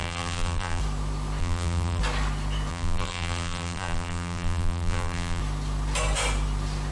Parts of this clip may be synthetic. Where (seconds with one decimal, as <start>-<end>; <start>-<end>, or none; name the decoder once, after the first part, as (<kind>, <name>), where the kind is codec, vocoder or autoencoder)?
0.0-0.8 (vocoder, BigVGAN v2); 1.4-2.0; 2.7-5.4